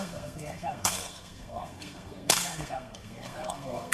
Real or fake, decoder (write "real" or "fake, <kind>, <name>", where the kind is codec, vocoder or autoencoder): fake, codec, SNAC